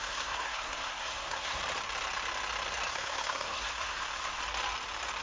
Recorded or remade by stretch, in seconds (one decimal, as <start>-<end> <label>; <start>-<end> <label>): 0.0-1.6 remade; 1.6-2.9 recorded; 2.9-4.4 remade; 4.4-5.2 recorded